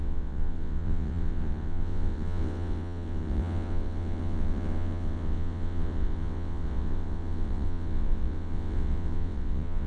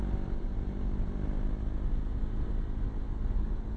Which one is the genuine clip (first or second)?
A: second